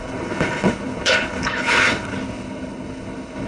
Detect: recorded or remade remade